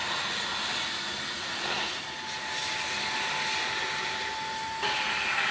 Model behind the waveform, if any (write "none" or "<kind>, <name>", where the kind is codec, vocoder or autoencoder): none